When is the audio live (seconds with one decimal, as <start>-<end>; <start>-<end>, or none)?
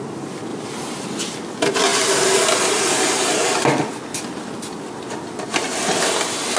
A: 0.0-0.5; 1.2-6.6